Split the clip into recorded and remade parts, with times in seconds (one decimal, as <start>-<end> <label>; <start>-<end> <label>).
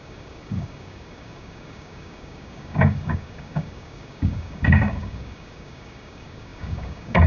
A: 0.0-7.3 remade